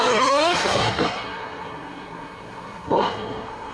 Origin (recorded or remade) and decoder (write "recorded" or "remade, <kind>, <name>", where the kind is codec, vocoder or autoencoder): remade, codec, SNAC